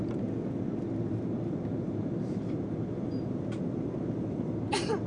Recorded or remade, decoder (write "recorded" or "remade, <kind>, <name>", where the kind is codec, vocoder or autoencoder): recorded